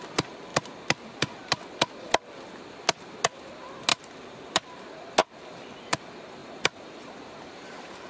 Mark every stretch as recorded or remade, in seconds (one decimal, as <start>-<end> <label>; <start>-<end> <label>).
0.0-3.9 recorded; 3.9-4.8 remade; 4.8-5.2 recorded; 5.2-5.7 remade; 5.7-6.4 recorded; 6.4-8.1 remade